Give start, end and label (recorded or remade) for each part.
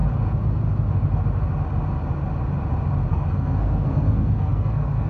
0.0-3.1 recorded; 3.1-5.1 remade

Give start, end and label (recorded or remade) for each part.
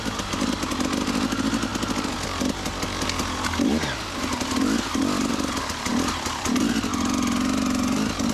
0.0-8.3 recorded